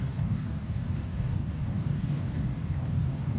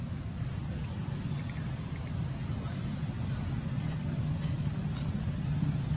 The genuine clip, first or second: second